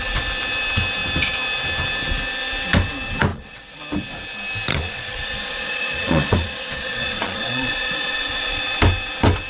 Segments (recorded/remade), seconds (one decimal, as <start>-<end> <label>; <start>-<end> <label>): 0.0-3.3 recorded; 3.3-3.8 remade; 3.8-4.7 recorded; 4.7-8.6 remade; 8.6-9.5 recorded